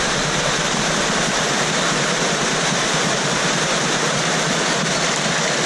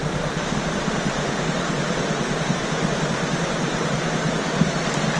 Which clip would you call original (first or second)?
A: second